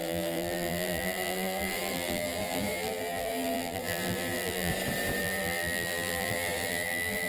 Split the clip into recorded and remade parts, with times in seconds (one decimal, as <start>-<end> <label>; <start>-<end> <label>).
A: 0.0-4.7 remade; 4.7-5.2 recorded; 5.2-7.3 remade